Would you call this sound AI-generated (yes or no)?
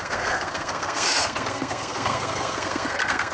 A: yes